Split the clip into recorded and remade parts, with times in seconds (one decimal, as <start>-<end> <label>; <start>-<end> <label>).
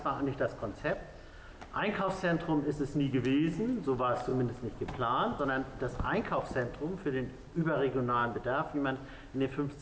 0.0-9.8 recorded